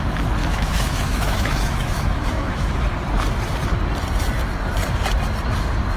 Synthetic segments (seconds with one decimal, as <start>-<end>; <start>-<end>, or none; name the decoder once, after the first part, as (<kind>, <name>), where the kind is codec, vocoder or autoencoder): 0.4-2.7 (autoencoder, DAC-VAE)